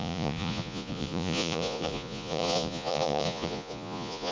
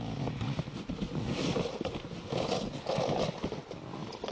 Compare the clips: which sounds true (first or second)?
second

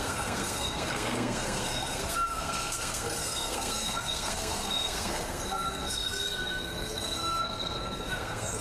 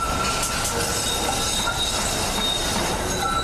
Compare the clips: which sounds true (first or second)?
second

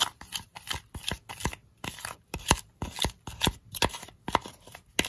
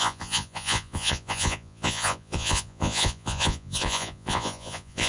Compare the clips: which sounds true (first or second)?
first